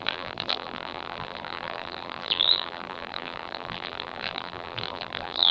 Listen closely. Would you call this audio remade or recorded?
remade